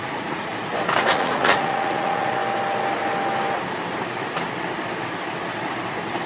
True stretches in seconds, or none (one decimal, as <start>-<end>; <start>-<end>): 0.5-1.1; 2.4-6.3